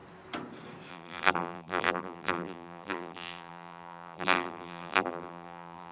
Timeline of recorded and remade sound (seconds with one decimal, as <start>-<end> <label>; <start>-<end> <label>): 0.0-0.9 recorded; 0.9-5.9 remade